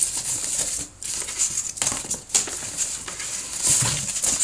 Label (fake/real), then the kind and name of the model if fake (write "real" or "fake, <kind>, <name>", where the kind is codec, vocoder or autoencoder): real